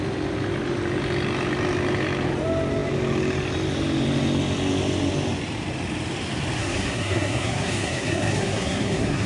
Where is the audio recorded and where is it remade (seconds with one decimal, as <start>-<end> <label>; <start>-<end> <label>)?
0.0-6.6 recorded; 6.6-9.3 remade